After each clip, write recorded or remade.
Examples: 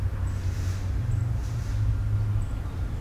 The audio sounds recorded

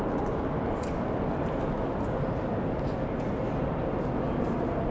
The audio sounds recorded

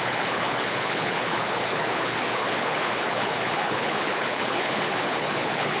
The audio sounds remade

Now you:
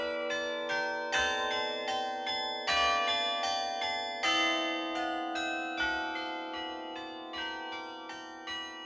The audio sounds recorded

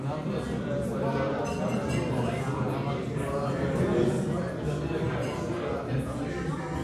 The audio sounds recorded